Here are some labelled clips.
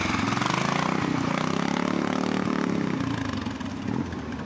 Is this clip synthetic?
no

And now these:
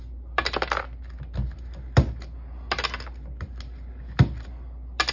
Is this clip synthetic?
no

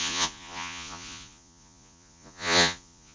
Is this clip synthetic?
yes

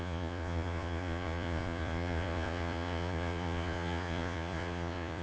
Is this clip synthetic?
yes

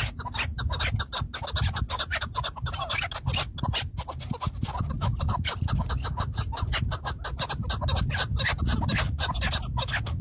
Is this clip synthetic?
no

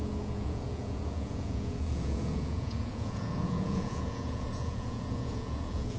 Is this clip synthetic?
yes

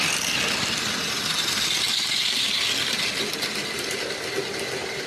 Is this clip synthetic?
no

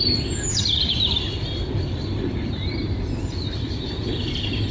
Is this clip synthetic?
no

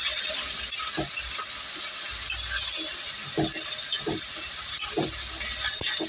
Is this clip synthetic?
no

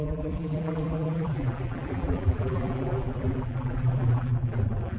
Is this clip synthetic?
yes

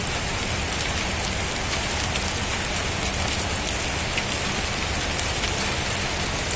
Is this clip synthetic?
no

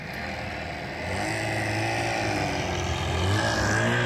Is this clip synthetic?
no